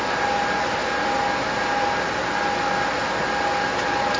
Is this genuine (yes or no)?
yes